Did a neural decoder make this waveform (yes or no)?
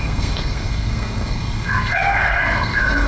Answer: yes